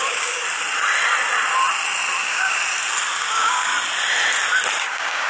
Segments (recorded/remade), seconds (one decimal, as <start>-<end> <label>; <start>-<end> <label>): 0.0-0.4 remade; 0.4-2.2 recorded; 2.2-2.6 remade; 2.6-3.2 recorded; 3.2-3.7 remade; 3.7-4.8 recorded; 4.8-5.3 remade